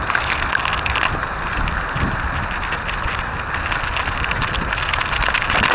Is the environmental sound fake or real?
real